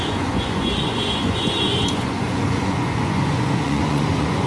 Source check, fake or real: fake